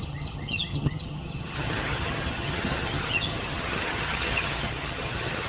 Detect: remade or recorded remade